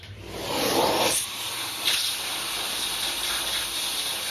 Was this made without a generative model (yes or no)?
yes